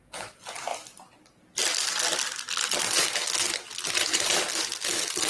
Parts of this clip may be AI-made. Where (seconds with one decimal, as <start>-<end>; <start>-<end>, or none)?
none

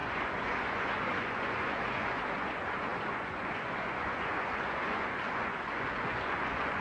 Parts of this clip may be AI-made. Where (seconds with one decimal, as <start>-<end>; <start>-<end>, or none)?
0.0-6.8

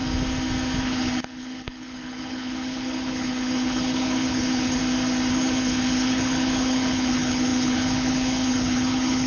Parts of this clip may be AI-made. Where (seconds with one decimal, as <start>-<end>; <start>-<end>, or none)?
0.8-4.8; 5.3-9.3

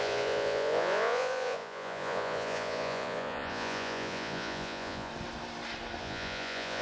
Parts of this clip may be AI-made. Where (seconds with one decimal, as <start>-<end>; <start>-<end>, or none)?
0.0-5.1; 6.0-6.8

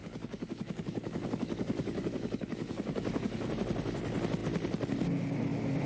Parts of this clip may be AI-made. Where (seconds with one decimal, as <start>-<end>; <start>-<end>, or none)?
0.0-3.5

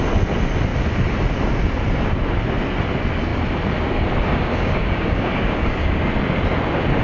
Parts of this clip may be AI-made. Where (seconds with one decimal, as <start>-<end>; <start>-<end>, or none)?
4.3-6.1

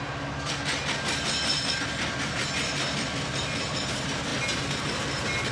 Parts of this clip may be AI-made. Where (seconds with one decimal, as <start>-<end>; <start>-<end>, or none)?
none